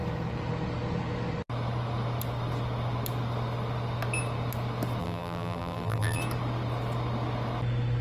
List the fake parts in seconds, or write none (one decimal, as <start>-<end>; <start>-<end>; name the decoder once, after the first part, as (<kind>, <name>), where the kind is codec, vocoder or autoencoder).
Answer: 5.0-6.2 (vocoder, BigVGAN v2)